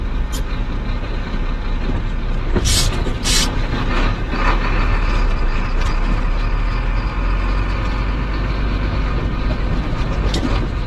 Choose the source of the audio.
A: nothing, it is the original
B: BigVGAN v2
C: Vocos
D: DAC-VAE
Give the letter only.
A